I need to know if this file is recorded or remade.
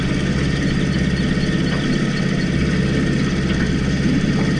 recorded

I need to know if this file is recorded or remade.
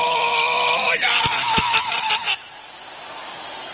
remade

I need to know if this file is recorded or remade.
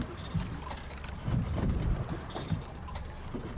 recorded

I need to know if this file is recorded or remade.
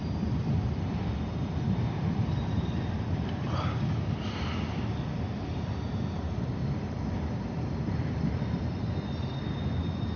recorded